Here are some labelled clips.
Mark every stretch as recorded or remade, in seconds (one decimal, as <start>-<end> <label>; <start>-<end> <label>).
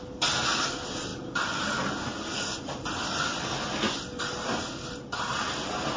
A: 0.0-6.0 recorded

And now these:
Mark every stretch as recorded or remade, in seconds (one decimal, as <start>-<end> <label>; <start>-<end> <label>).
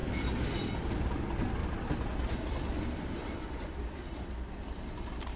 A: 0.0-0.9 remade; 0.9-1.6 recorded; 1.6-4.3 remade; 4.3-5.4 recorded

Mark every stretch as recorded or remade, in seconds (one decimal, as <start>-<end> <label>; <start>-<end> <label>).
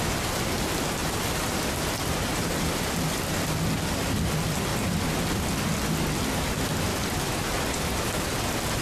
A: 0.0-1.0 recorded; 1.0-1.8 remade; 1.8-4.7 recorded; 4.7-5.5 remade; 5.5-6.9 recorded; 6.9-7.5 remade; 7.5-8.8 recorded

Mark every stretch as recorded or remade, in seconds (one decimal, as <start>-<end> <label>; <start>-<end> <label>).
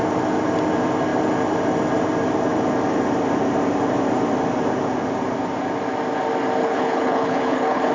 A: 0.0-6.6 recorded; 6.6-7.9 remade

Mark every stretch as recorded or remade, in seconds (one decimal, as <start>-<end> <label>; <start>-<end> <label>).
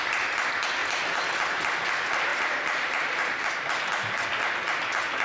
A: 0.0-2.3 recorded; 2.3-3.9 remade; 3.9-5.2 recorded